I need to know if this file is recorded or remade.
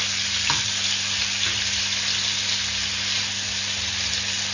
recorded